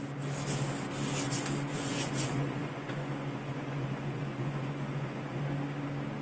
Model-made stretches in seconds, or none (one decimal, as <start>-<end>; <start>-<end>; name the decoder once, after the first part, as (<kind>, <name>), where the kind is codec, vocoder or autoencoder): 1.7-5.4 (vocoder, Vocos)